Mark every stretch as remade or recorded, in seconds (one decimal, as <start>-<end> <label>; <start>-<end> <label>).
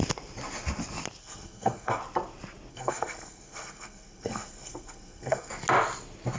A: 0.0-1.2 recorded; 1.2-2.0 remade; 2.0-2.7 recorded; 2.7-5.5 remade; 5.5-6.4 recorded